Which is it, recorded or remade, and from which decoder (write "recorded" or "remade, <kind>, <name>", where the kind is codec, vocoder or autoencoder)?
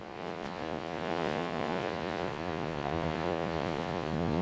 remade, vocoder, Vocos